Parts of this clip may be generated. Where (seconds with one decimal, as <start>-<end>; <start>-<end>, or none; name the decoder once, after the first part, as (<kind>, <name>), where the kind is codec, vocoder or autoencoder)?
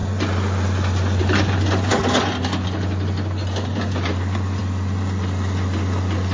none